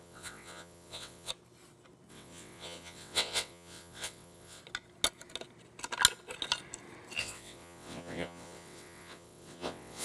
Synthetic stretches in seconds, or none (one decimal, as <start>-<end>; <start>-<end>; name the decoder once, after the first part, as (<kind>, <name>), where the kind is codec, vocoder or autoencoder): 0.0-1.3 (vocoder, WaveNeXt); 2.1-4.6; 7.2-10.0